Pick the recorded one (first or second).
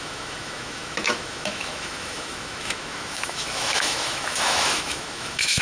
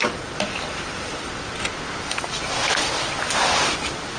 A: second